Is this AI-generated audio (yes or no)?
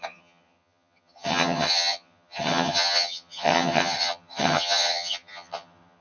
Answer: yes